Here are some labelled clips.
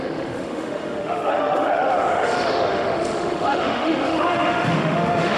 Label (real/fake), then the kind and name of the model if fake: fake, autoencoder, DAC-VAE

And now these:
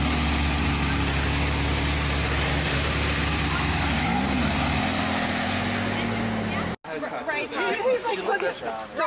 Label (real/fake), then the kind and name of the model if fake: real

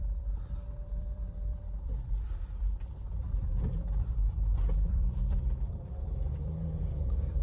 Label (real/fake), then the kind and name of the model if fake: fake, vocoder, BigVGAN v2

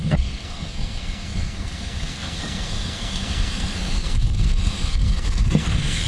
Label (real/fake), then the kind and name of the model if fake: fake, codec, SNAC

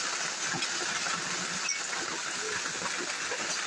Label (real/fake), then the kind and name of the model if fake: real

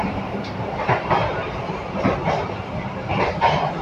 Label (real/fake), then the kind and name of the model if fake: fake, vocoder, BigVGAN v2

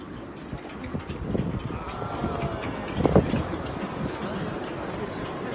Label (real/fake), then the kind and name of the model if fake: real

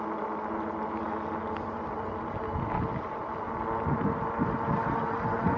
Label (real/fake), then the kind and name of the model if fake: real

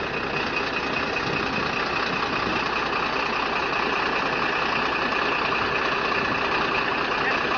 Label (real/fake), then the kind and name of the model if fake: real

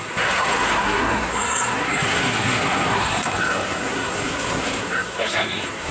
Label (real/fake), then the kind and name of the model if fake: fake, codec, SNAC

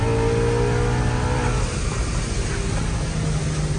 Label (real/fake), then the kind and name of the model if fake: real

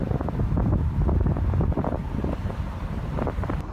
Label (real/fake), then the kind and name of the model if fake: real